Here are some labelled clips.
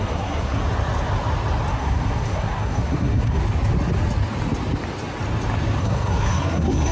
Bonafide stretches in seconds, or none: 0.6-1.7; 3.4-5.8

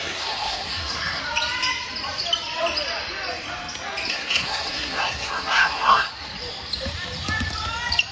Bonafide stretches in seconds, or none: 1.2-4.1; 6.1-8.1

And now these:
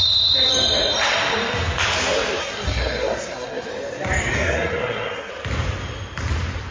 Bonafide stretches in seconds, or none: 0.0-2.4; 3.7-4.3; 5.3-6.7

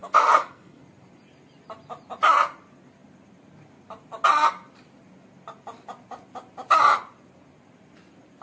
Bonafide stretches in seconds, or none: 0.8-8.4

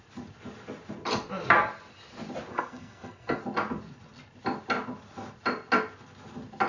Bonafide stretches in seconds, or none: 0.0-2.5; 3.4-6.7